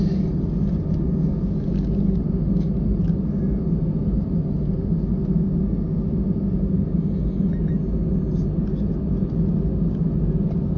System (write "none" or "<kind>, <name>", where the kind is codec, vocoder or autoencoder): none